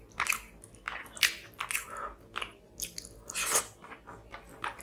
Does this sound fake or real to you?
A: real